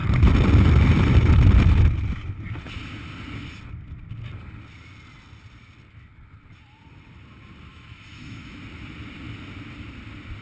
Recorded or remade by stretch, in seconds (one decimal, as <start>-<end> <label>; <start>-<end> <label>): 0.0-7.7 recorded; 7.7-8.6 remade; 8.6-10.4 recorded